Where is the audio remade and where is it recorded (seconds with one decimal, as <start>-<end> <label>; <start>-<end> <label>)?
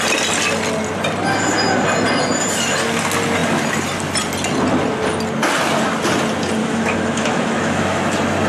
0.0-6.6 recorded; 6.6-8.0 remade; 8.0-8.5 recorded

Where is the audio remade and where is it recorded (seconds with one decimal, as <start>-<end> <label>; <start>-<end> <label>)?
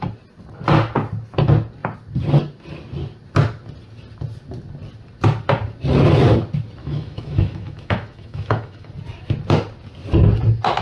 0.0-6.8 recorded; 6.8-8.9 remade; 8.9-10.8 recorded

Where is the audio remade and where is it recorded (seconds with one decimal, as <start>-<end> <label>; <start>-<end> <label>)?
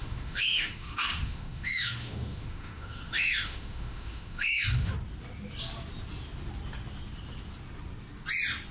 0.0-4.9 remade; 4.9-8.7 recorded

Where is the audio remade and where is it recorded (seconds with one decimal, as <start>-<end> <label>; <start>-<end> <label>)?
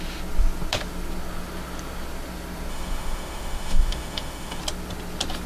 0.0-2.7 recorded; 2.7-4.6 remade; 4.6-5.5 recorded